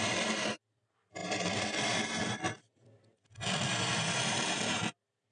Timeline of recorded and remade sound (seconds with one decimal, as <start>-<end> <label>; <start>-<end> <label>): 0.0-5.3 recorded